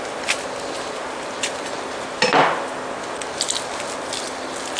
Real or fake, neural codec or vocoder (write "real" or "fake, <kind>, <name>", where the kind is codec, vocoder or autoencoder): real